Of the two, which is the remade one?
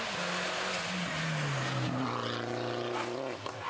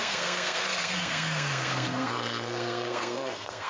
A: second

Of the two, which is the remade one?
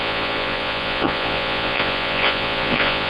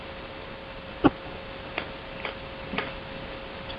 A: first